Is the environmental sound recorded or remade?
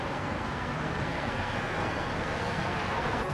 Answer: remade